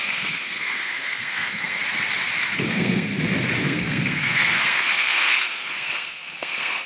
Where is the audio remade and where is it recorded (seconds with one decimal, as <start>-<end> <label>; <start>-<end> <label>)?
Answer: 0.0-1.8 remade; 1.8-2.6 recorded; 2.6-3.1 remade; 3.1-3.6 recorded; 3.6-6.9 remade

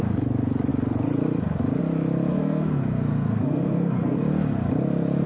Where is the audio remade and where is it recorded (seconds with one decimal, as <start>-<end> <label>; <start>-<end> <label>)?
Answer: 0.0-2.3 recorded; 2.3-4.2 remade; 4.2-5.3 recorded

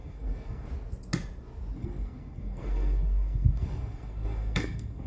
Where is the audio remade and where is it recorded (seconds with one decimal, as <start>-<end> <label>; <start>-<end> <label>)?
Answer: 0.0-0.7 remade; 0.7-1.8 recorded; 1.8-5.1 remade

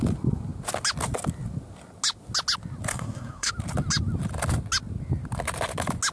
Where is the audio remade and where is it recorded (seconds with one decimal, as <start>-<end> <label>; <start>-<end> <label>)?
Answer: 0.0-2.9 recorded; 2.9-3.5 remade; 3.5-6.1 recorded

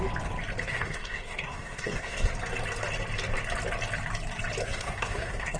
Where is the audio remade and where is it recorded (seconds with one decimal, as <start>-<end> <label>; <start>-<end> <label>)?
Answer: 0.0-0.7 recorded; 0.7-2.3 remade; 2.3-4.6 recorded; 4.6-5.6 remade